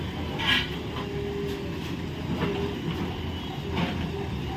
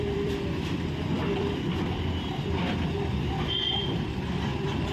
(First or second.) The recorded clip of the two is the first